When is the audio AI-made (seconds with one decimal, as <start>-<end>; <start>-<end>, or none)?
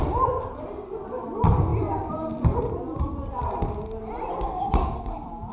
none